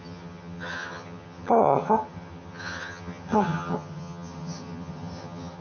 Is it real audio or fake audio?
fake